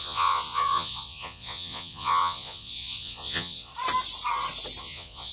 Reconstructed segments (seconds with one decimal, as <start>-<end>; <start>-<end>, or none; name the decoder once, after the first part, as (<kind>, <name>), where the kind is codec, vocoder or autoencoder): 0.0-3.7 (vocoder, Vocos); 4.8-5.3